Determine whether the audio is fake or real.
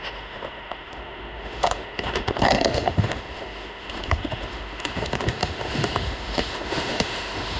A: fake